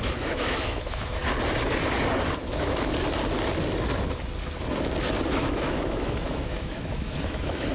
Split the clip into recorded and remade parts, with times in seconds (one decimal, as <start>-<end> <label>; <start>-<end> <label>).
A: 0.0-1.2 remade; 1.2-5.3 recorded; 5.3-7.7 remade